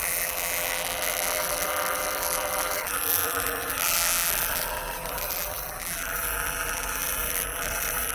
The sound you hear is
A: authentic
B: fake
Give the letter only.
B